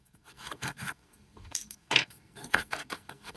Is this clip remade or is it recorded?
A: remade